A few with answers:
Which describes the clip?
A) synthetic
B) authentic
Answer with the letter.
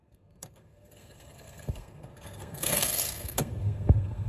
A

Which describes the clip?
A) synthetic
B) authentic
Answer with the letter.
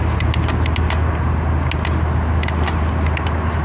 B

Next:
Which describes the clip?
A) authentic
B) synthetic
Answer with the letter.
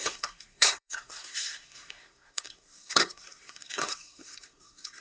B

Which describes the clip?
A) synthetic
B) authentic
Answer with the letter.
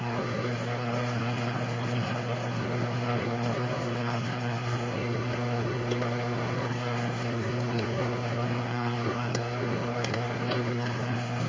A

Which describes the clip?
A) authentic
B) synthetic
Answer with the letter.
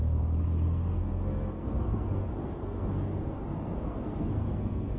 B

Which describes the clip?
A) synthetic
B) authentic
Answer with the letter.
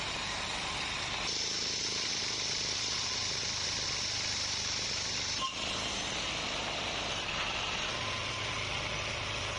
B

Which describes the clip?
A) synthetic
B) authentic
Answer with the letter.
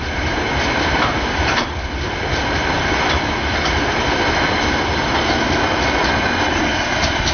B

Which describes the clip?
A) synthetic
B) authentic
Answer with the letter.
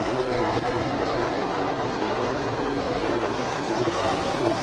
A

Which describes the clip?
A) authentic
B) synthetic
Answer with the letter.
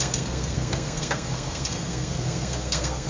B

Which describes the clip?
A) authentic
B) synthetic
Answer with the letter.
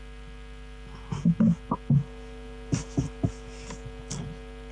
A